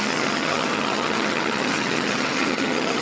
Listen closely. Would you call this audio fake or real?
fake